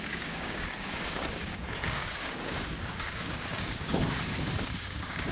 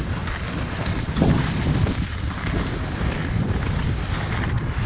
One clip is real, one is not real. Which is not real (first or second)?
first